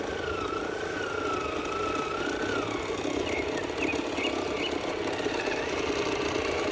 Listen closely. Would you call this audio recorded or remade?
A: recorded